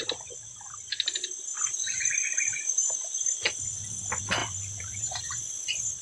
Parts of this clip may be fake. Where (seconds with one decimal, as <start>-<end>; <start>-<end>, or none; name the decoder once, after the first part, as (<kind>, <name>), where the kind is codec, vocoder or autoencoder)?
1.5-2.1 (vocoder, BigVGAN v2); 2.5-3.2; 4.4-5.2

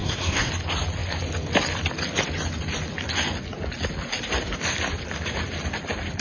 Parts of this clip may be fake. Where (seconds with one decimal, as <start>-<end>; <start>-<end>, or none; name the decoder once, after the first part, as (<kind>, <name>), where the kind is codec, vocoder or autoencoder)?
0.0-0.5 (codec, SNAC)

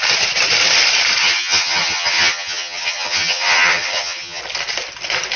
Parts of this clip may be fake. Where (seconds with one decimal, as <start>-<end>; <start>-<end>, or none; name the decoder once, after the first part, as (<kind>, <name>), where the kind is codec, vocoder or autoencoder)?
1.2-4.4 (vocoder, HiFi-GAN)

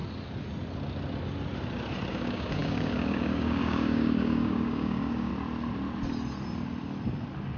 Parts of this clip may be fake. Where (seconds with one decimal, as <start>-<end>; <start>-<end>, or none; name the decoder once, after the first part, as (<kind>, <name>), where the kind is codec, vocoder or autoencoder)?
2.1-5.3 (codec, DAC)